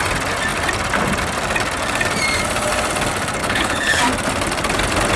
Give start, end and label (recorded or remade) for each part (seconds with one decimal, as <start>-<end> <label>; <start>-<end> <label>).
0.0-3.4 recorded; 3.4-4.0 remade; 4.0-5.2 recorded